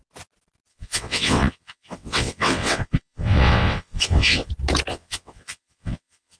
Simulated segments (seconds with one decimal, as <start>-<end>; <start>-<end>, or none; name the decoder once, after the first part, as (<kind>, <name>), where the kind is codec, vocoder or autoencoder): 0.7-4.5 (vocoder, WaveNeXt); 4.9-6.4

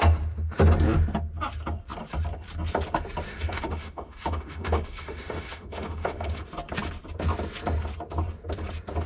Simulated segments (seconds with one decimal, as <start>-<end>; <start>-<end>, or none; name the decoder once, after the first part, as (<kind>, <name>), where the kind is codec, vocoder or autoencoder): 3.3-6.4 (autoencoder, DAC-VAE)